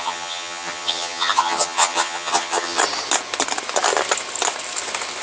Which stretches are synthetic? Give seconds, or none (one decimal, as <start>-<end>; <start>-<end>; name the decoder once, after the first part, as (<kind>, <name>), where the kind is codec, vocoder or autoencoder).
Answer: 0.0-2.8 (vocoder, HiFi-GAN)